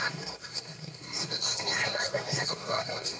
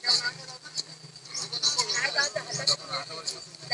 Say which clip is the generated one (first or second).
first